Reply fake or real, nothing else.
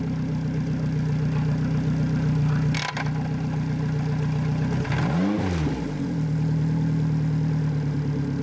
real